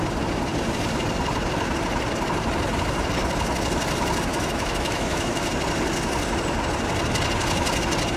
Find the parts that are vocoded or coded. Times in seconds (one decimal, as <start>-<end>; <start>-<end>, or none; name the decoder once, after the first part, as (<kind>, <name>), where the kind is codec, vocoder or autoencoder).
4.3-5.5 (autoencoder, DAC-VAE)